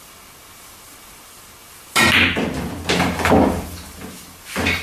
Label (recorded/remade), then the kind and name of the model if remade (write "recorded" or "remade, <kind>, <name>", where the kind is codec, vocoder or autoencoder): recorded